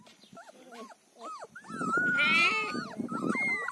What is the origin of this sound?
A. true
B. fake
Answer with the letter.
A